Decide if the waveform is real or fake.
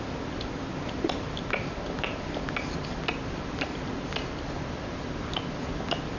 real